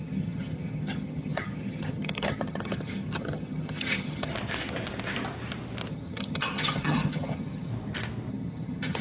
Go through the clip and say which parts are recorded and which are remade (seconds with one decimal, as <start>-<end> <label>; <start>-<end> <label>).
0.0-4.3 remade; 4.3-5.9 recorded; 5.9-7.7 remade; 7.7-8.3 recorded; 8.3-9.0 remade